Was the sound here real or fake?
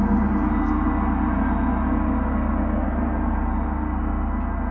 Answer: real